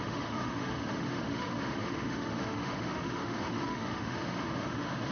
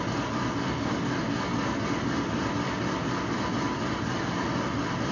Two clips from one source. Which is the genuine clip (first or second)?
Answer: second